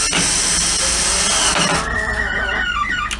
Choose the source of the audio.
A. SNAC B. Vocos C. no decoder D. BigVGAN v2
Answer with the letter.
C